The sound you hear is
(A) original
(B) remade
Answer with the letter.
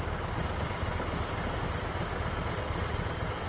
A